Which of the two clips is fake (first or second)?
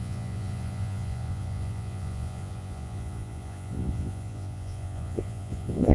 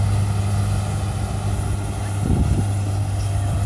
first